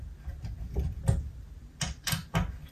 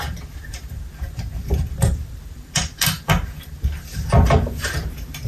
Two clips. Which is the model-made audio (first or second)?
second